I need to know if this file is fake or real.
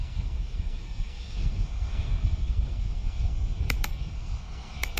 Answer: fake